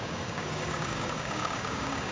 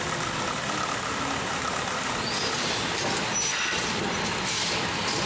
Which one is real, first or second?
second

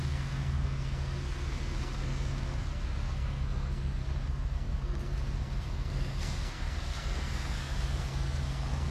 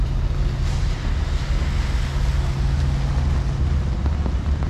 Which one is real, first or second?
second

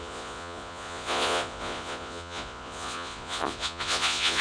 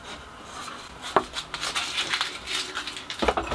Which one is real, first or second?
second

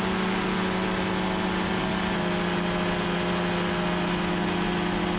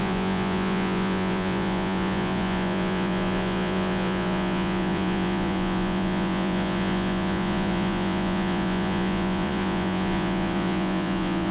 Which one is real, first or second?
first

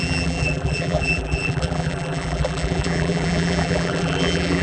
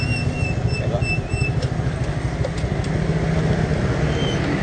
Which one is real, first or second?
second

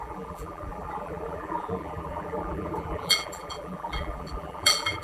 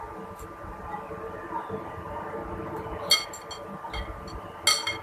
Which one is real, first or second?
second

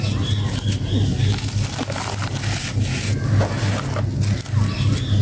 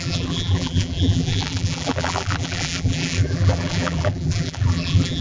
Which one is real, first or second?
first